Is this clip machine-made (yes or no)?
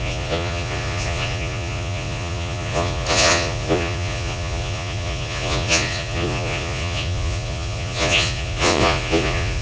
yes